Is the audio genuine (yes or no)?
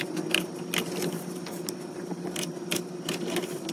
yes